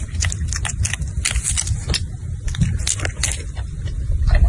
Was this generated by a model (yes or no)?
no